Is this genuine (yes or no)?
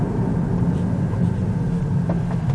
yes